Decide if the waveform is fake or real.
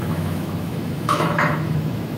fake